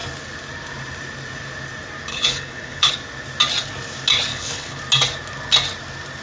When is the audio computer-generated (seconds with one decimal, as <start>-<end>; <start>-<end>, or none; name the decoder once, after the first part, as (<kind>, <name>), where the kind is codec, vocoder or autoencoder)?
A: 2.1-2.9 (codec, HILCodec); 4.3-4.8